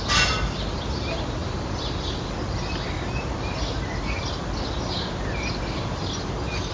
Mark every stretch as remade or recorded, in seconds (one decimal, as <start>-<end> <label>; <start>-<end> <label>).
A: 0.0-6.7 recorded